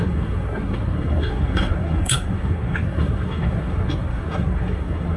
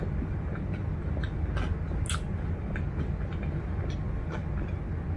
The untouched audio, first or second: second